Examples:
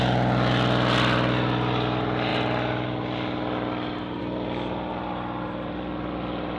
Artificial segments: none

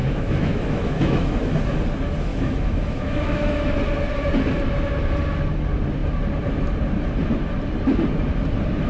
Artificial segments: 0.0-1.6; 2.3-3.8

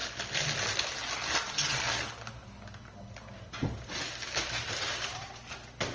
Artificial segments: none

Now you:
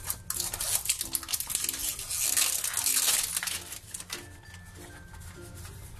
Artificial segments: none

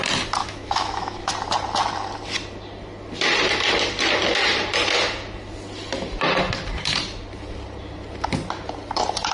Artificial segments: 0.4-1.3

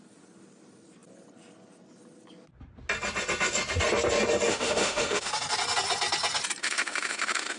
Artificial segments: 4.5-5.3; 6.6-7.6

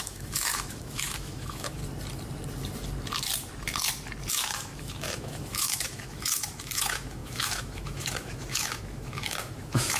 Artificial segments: 0.0-1.8; 4.3-10.0